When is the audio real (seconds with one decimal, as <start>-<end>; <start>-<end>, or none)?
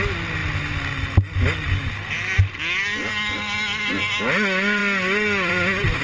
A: 0.0-6.0